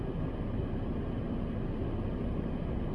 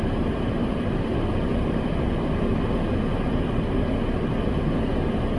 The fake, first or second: second